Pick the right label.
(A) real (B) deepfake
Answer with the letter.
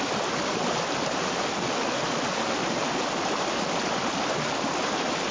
A